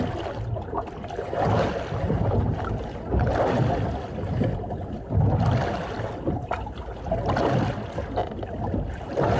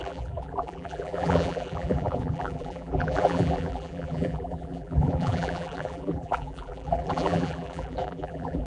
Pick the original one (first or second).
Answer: first